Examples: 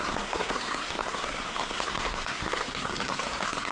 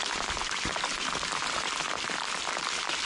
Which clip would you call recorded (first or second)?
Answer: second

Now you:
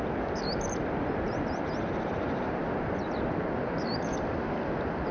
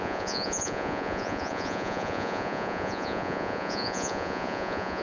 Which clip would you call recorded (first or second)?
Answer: first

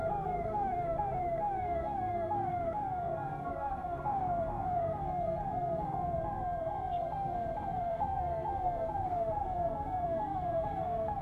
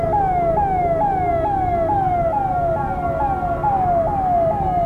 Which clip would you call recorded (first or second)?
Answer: second